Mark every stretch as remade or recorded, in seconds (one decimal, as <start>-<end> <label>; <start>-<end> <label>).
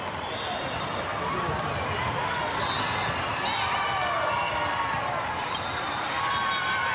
0.0-1.1 remade; 1.1-5.2 recorded; 5.2-6.9 remade